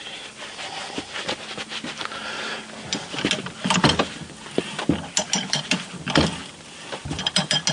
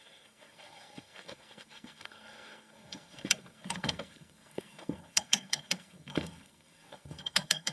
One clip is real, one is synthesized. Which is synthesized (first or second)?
second